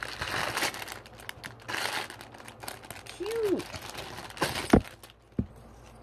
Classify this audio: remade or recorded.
recorded